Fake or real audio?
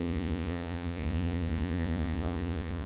fake